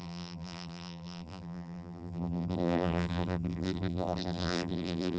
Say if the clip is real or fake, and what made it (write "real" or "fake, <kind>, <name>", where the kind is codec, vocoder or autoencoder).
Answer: fake, vocoder, BigVGAN v2